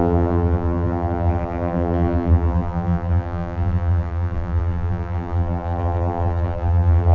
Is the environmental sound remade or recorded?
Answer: remade